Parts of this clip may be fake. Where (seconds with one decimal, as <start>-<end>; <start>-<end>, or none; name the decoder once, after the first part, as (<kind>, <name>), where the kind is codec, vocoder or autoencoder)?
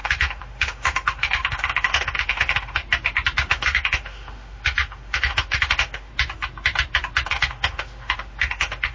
0.0-2.8 (autoencoder, DAC-VAE); 3.5-6.1; 7.3-8.9